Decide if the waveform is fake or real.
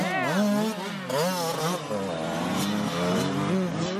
real